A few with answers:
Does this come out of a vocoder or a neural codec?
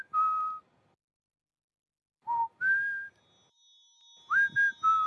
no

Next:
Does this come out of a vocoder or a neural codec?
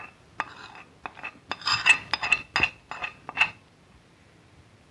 no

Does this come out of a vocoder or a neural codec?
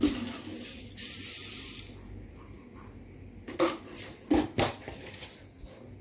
no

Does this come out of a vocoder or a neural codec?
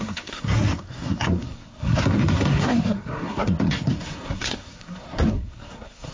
yes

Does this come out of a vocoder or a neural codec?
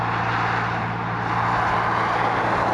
no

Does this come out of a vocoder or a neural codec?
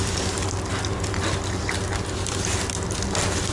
no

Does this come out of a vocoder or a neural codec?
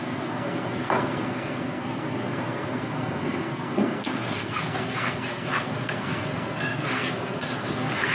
yes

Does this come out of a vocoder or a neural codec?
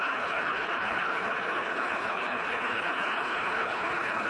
yes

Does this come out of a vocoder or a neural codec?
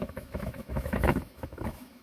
yes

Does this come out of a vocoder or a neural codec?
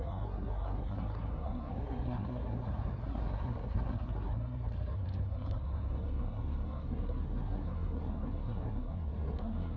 yes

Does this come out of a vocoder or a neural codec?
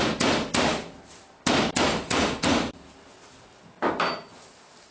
no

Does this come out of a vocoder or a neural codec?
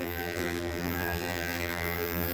yes